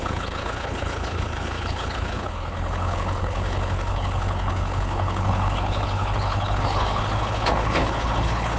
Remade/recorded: remade